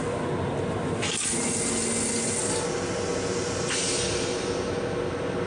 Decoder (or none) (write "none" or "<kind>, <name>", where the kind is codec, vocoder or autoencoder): none